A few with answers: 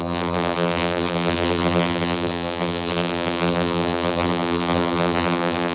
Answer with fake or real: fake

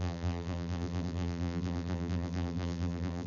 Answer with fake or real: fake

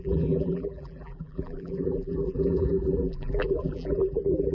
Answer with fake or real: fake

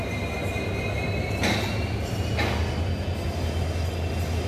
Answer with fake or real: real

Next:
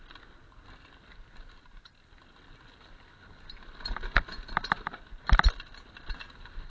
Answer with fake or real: real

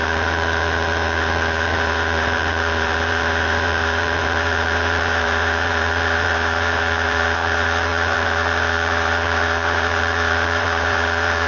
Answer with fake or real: fake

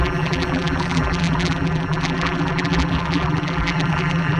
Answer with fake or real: fake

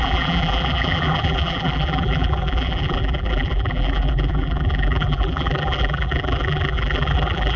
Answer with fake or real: fake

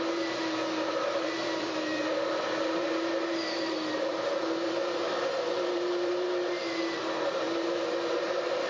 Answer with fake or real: fake